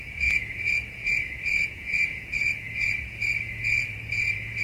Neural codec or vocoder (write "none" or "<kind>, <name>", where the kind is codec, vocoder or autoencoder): vocoder, Vocos